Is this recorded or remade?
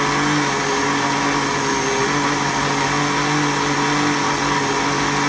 recorded